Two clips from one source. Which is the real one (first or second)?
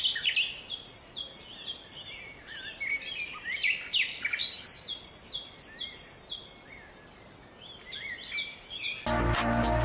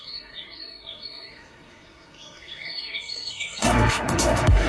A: first